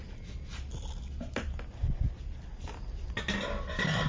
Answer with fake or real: real